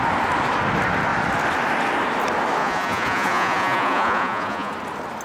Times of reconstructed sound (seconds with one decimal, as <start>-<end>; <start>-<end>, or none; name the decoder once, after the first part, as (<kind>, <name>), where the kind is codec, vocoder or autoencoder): 2.6-4.7 (vocoder, Vocos)